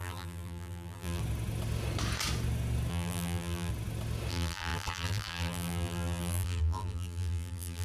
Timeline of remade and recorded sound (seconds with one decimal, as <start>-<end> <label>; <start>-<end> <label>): 0.0-1.2 remade; 1.2-2.9 recorded; 2.9-3.7 remade; 3.7-4.3 recorded; 4.3-7.8 remade